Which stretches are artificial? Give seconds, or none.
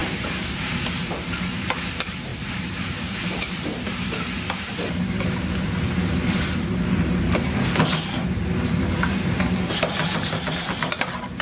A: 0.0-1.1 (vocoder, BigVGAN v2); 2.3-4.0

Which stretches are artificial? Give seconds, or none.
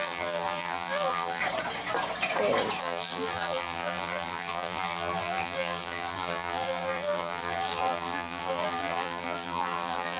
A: 0.0-1.4 (vocoder, BigVGAN v2); 2.8-10.2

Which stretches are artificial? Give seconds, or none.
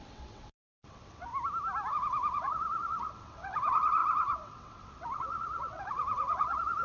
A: 0.0-1.3 (vocoder, WaveNeXt); 1.9-6.8